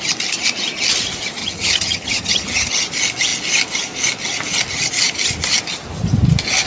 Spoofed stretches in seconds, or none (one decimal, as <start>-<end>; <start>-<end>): 1.4-2.7